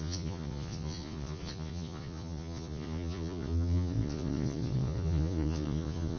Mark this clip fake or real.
fake